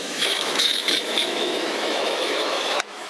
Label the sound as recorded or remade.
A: remade